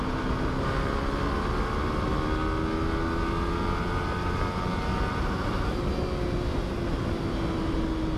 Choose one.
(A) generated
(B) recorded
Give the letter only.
B